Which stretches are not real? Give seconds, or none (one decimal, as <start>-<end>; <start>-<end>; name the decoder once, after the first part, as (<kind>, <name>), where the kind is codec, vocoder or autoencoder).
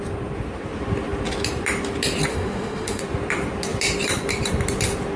2.3-3.0 (autoencoder, DAC-VAE)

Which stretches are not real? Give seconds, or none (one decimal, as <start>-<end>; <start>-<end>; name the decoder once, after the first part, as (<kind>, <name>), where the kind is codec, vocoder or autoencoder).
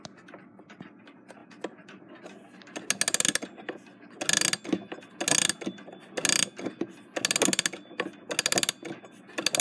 none